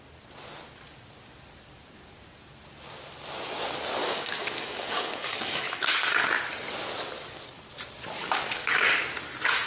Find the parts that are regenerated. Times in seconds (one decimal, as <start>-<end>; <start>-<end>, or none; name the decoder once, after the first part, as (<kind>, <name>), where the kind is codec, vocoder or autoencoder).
4.0-6.3 (codec, DAC); 8.2-9.0